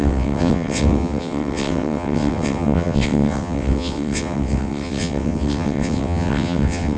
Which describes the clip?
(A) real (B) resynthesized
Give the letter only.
B